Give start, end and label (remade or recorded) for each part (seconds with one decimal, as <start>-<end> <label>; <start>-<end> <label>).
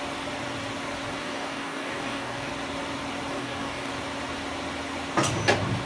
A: 0.0-1.2 recorded; 1.2-2.5 remade; 2.5-3.3 recorded; 3.3-3.9 remade; 3.9-5.9 recorded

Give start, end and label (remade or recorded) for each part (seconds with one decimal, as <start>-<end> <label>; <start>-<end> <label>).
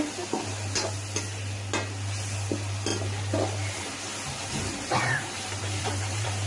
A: 0.0-4.4 recorded; 4.4-6.5 remade